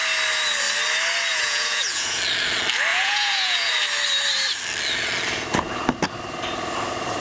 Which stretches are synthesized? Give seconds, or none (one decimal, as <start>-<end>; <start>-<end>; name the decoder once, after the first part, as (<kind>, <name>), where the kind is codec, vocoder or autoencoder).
1.3-2.2 (vocoder, Vocos); 2.9-3.7